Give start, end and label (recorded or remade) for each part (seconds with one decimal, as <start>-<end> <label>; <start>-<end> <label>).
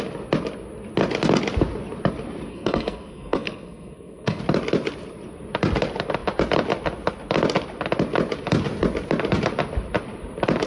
0.0-2.5 recorded; 2.5-4.4 remade; 4.4-10.7 recorded